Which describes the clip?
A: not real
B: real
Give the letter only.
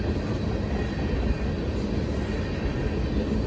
B